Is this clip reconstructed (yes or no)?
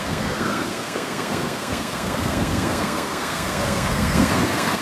yes